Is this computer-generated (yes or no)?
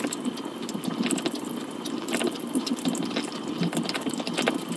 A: no